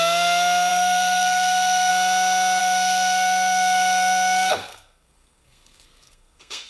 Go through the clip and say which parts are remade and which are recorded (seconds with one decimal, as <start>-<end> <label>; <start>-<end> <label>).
0.0-0.7 recorded; 0.7-1.9 remade; 1.9-2.6 recorded; 2.6-6.7 remade